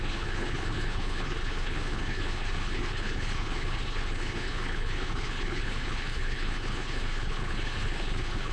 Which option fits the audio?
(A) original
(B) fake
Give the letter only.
B